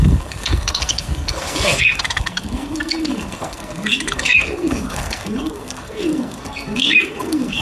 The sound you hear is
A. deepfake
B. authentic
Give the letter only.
A